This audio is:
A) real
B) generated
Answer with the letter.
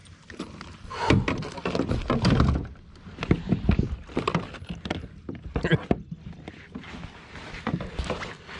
A